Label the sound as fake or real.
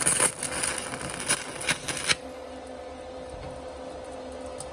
real